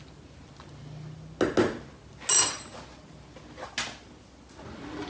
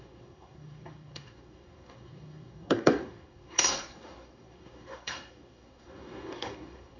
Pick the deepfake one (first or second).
second